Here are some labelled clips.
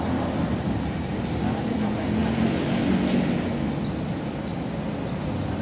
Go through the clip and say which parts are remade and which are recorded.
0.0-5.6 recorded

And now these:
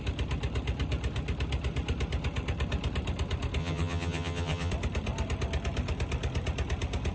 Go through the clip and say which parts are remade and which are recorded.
0.0-3.6 recorded; 3.6-4.7 remade; 4.7-7.1 recorded

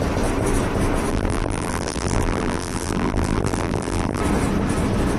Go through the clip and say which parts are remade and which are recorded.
0.0-1.1 recorded; 1.1-4.2 remade; 4.2-5.2 recorded

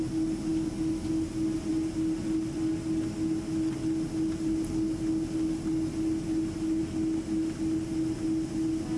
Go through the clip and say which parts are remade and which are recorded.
0.0-9.0 recorded

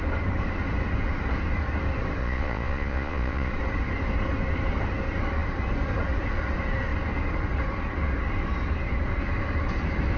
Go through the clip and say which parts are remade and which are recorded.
0.0-2.2 recorded; 2.2-3.5 remade; 3.5-10.2 recorded

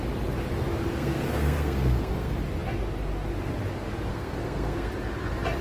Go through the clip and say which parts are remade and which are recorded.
0.0-0.9 recorded; 0.9-2.3 remade; 2.3-4.1 recorded; 4.1-4.9 remade; 4.9-5.6 recorded